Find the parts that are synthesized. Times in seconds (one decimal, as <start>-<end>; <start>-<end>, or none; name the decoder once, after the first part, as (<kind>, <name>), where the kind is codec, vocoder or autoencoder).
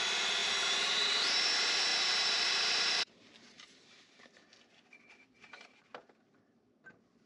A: 0.4-1.5 (vocoder, BigVGAN v2); 1.9-3.9